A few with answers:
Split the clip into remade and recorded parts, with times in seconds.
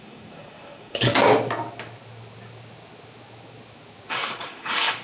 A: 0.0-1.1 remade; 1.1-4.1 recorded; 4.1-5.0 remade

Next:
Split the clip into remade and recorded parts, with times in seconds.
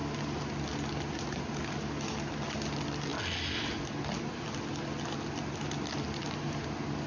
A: 0.0-7.1 recorded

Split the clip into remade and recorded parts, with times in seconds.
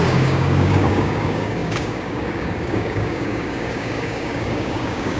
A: 0.0-5.2 remade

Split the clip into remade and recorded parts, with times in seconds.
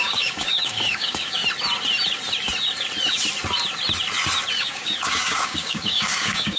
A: 0.0-1.4 remade; 1.4-4.6 recorded; 4.6-6.6 remade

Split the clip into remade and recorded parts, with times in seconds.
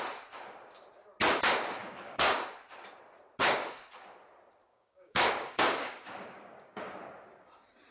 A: 0.0-1.8 recorded; 1.8-2.4 remade; 2.4-3.4 recorded; 3.4-3.9 remade; 3.9-4.7 recorded; 4.7-7.0 remade; 7.0-7.9 recorded